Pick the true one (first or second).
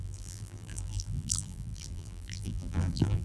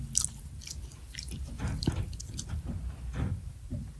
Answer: second